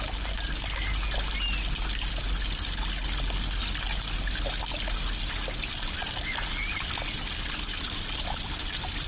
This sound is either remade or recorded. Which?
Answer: recorded